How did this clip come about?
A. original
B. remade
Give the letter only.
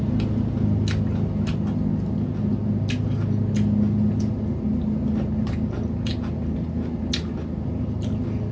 A